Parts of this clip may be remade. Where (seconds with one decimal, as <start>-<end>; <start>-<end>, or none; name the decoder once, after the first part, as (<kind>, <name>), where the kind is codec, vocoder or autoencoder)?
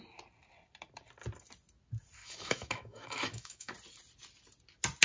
2.2-3.7 (autoencoder, DAC-VAE)